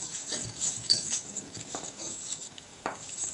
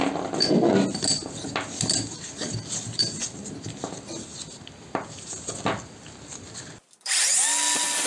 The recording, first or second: second